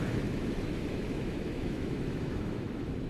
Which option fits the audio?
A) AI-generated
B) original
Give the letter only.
A